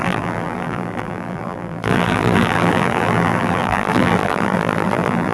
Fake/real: fake